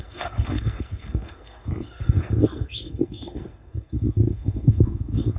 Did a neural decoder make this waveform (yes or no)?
yes